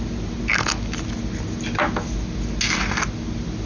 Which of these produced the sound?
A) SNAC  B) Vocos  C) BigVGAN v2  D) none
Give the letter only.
D